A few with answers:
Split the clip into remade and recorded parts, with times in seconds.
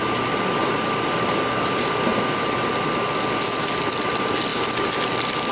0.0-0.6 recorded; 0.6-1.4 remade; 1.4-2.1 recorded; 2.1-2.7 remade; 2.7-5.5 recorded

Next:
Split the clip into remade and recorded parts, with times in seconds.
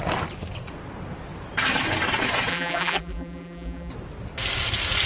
0.0-2.5 recorded; 2.5-3.9 remade; 3.9-5.1 recorded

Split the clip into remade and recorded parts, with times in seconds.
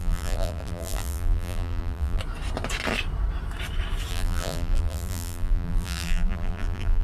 0.0-2.2 remade; 2.2-4.1 recorded; 4.1-7.0 remade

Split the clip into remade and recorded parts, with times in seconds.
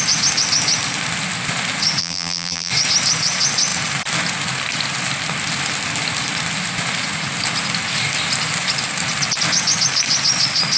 0.0-2.0 recorded; 2.0-2.7 remade; 2.7-10.8 recorded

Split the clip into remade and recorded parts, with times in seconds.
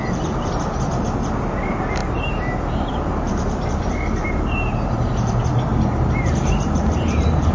0.0-2.0 remade; 2.0-2.9 recorded; 2.9-7.5 remade